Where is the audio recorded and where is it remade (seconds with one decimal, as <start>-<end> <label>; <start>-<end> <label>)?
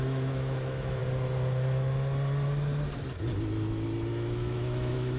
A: 0.0-1.0 remade; 1.0-4.1 recorded; 4.1-5.2 remade